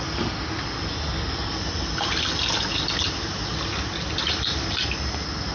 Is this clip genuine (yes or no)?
yes